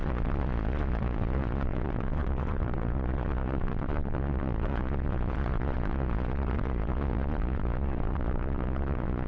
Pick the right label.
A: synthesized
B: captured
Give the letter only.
A